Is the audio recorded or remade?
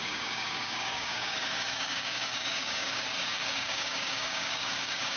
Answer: remade